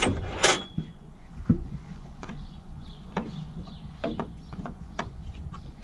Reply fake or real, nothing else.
fake